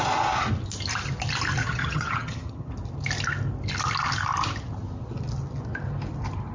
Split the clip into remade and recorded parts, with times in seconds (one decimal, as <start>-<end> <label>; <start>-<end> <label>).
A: 0.0-1.6 recorded; 1.6-2.7 remade; 2.7-6.5 recorded